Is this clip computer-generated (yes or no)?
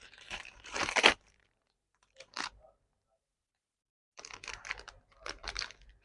yes